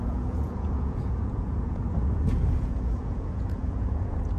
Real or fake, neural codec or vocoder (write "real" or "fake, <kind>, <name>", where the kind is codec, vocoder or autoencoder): fake, vocoder, Vocos